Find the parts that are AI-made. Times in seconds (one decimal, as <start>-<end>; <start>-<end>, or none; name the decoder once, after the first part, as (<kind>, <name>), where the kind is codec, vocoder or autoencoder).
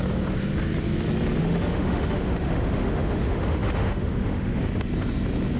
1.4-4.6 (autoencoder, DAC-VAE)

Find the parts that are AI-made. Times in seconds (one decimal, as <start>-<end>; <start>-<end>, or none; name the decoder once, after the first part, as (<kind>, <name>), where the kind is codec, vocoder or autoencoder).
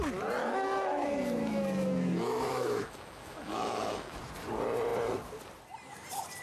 0.4-4.2 (autoencoder, DAC-VAE)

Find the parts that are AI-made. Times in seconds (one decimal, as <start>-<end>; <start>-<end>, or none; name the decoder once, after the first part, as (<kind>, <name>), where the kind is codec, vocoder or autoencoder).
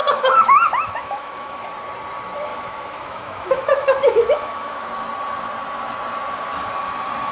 0.0-1.6 (autoencoder, DAC-VAE); 2.5-4.9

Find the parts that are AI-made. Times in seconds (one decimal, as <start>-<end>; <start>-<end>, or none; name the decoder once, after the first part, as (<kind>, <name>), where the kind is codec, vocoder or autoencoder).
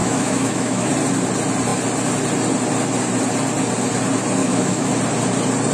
0.0-0.9 (autoencoder, DAC-VAE); 4.4-4.9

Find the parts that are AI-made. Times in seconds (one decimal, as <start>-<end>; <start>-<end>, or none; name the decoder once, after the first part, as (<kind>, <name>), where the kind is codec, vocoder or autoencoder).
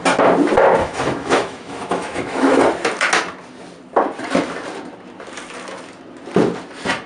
0.8-2.6 (autoencoder, DAC-VAE)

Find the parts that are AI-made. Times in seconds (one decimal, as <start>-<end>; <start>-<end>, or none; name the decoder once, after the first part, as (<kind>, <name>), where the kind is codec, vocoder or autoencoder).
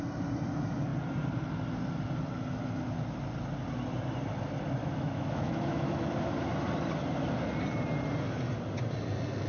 4.8-6.1 (autoencoder, DAC-VAE)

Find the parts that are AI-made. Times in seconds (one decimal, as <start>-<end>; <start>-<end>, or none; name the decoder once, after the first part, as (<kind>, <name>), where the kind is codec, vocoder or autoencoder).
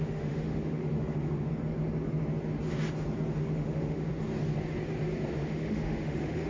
0.0-1.5 (autoencoder, DAC-VAE); 3.4-4.1; 5.3-6.5